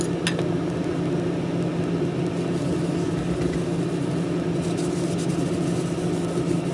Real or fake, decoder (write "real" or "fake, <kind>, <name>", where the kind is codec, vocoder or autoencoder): real